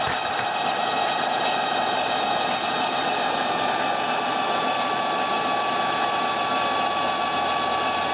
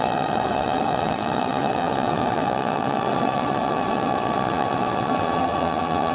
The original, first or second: first